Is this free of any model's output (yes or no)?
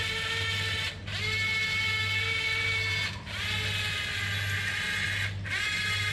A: yes